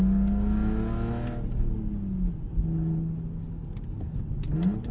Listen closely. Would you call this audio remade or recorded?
recorded